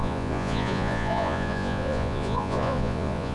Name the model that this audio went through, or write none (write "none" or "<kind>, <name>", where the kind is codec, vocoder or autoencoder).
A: vocoder, Vocos